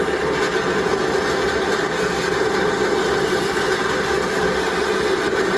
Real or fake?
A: real